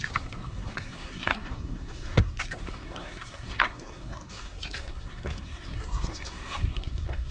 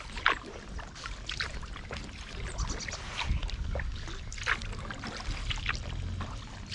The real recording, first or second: second